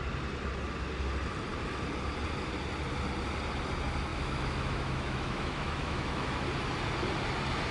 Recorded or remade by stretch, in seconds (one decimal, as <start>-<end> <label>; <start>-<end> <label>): 0.0-4.1 recorded; 4.1-6.5 remade; 6.5-7.7 recorded